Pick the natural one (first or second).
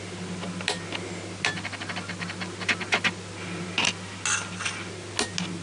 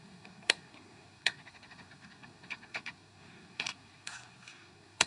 first